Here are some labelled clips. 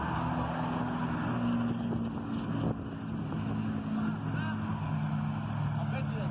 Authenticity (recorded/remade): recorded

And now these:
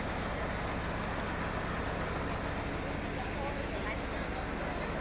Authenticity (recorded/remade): recorded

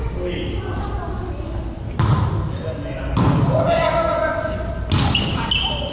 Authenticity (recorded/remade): recorded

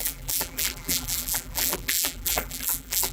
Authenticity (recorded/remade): remade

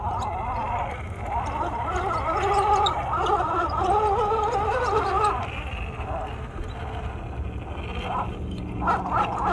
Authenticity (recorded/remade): recorded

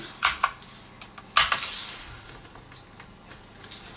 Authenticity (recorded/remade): recorded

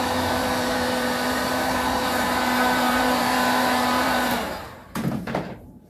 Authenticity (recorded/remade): remade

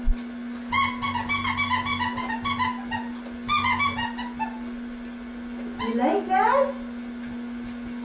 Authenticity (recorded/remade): recorded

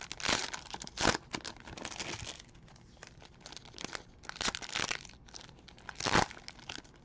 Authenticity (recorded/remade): recorded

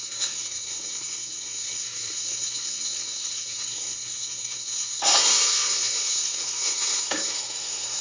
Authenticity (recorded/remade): remade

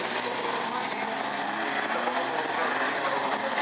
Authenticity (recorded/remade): recorded